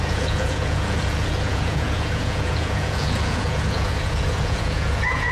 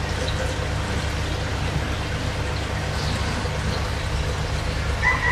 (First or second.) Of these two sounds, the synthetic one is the first